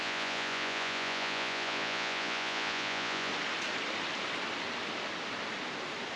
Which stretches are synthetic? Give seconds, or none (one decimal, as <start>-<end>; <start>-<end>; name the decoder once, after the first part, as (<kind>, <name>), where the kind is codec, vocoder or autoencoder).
0.0-3.3 (vocoder, Vocos)